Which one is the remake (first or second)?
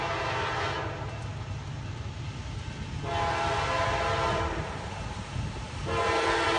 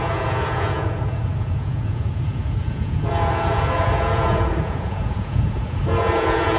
second